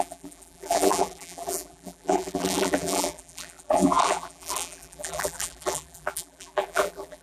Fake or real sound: fake